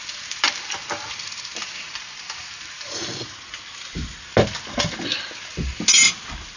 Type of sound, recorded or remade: recorded